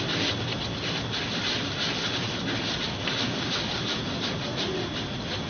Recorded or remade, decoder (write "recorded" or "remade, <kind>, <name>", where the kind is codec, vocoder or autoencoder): recorded